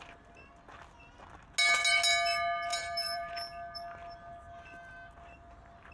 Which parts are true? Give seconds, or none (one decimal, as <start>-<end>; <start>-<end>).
0.0-2.7; 3.3-5.9